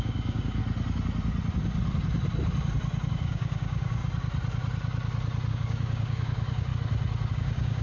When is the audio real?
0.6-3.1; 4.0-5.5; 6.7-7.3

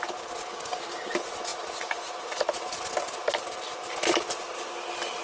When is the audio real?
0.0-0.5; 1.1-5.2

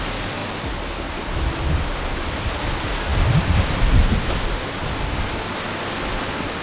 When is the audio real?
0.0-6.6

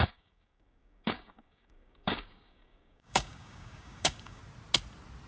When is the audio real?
4.4-5.3

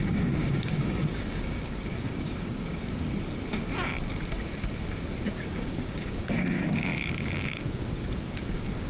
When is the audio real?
3.1-5.3

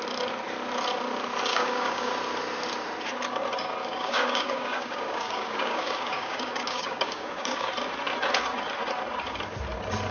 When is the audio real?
0.0-1.5; 2.1-3.8; 7.7-10.1

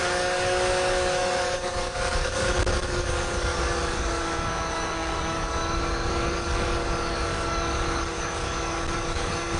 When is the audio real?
none